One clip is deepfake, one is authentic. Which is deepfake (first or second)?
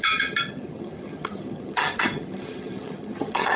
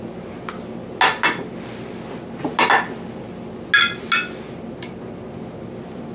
first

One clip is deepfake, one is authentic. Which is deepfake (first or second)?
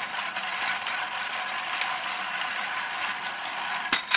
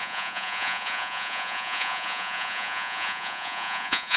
second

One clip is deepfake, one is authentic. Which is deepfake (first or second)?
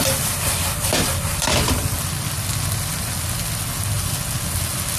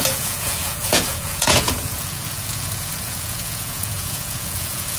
second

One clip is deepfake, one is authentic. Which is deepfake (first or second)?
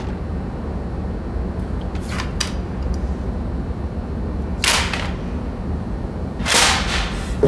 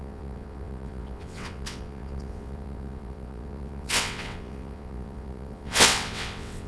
second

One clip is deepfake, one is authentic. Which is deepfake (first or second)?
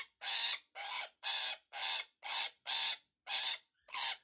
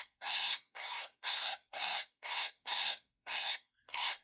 second